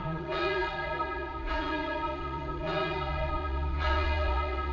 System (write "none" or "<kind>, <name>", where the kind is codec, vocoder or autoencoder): vocoder, Vocos